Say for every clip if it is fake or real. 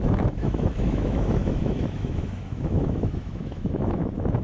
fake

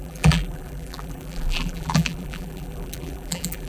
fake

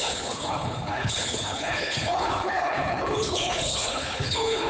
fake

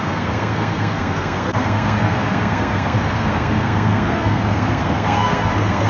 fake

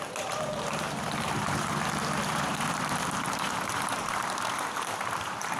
fake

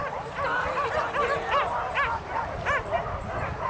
real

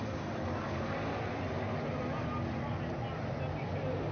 real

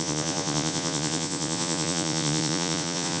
fake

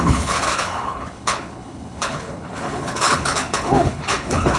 fake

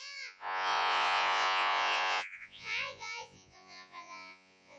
fake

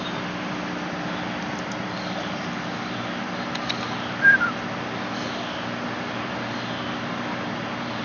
real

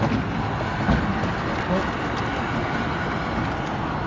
real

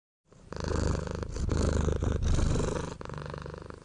real